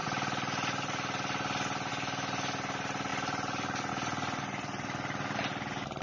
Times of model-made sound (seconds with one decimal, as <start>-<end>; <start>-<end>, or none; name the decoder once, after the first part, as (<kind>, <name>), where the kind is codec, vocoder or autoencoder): none